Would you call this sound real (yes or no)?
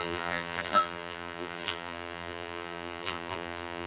no